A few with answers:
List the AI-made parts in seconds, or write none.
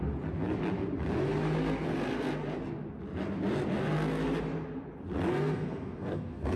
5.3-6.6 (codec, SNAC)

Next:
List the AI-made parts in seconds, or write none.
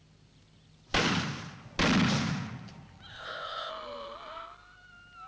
3.1-3.7 (codec, ZipCodec)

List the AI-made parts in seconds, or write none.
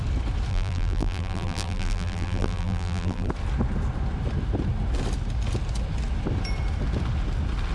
0.5-3.3 (vocoder, BigVGAN v2)